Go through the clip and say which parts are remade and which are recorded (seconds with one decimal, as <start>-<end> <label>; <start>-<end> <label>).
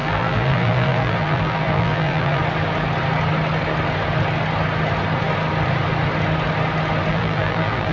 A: 0.0-2.4 remade; 2.4-7.1 recorded; 7.1-7.9 remade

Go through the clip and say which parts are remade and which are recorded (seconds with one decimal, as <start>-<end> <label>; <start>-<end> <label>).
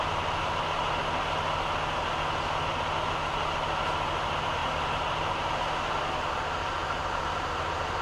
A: 0.0-0.8 remade; 0.8-4.6 recorded; 4.6-8.0 remade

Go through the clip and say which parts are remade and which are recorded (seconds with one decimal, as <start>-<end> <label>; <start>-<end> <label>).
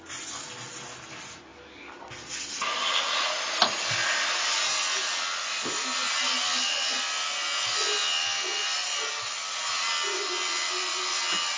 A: 0.0-11.6 recorded